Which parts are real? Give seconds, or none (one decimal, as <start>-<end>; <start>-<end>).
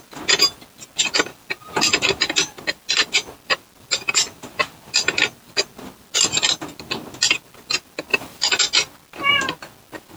0.0-8.1; 8.6-10.2